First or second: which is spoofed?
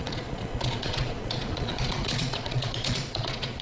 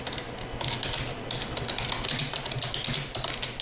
first